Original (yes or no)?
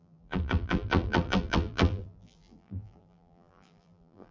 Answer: no